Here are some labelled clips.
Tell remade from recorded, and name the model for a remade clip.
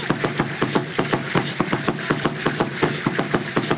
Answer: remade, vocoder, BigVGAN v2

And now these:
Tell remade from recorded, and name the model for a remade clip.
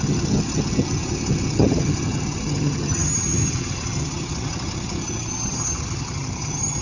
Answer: remade, vocoder, HiFi-GAN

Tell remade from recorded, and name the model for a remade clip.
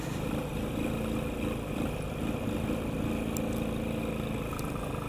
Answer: recorded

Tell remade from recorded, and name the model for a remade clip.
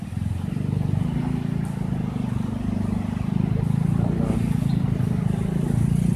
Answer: recorded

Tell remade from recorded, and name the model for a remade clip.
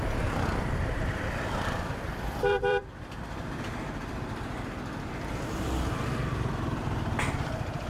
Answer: remade, vocoder, BigVGAN v2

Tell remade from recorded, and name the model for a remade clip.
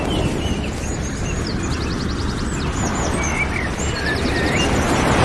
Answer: recorded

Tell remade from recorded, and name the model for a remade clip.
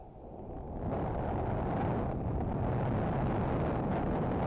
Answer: recorded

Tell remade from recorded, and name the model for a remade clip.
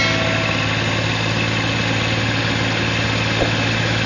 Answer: recorded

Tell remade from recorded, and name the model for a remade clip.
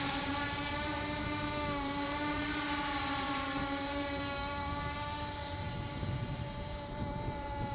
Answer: remade, vocoder, BigVGAN v2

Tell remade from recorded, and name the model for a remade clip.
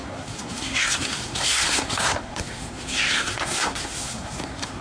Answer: remade, codec, SNAC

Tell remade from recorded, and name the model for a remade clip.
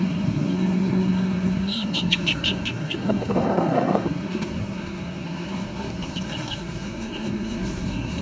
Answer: remade, codec, SNAC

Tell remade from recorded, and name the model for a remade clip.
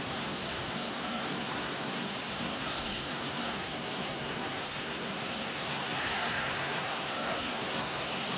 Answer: remade, codec, SNAC